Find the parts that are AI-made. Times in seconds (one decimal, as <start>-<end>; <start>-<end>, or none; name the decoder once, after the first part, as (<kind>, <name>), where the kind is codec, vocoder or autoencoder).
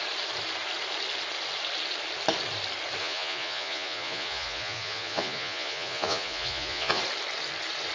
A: 3.0-7.0 (vocoder, Vocos)